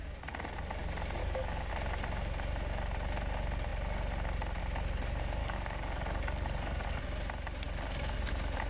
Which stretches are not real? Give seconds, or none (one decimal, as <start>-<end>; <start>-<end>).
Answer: 1.2-1.7; 5.4-7.0